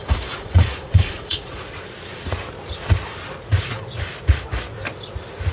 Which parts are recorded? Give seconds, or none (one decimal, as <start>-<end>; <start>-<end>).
1.6-5.5